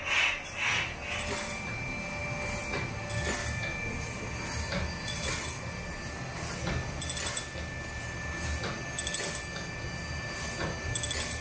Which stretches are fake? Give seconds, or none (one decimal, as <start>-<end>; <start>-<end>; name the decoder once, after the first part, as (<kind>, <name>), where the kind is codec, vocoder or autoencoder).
none